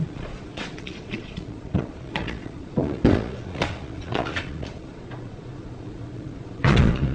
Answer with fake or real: fake